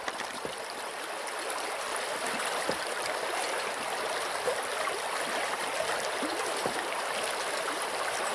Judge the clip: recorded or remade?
remade